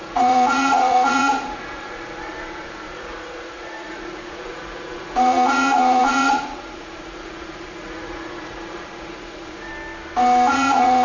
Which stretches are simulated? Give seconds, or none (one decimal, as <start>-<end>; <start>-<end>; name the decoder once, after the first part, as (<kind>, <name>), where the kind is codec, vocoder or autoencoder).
0.0-9.7 (vocoder, Vocos); 10.5-11.0